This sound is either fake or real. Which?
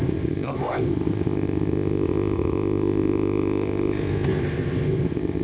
fake